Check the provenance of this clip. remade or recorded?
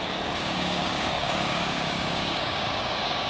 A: remade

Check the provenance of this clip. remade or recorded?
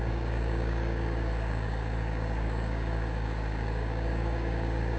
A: remade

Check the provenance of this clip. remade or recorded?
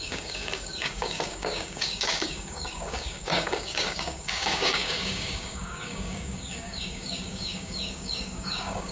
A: remade